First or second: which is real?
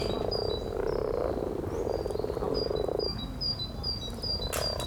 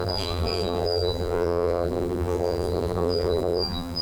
first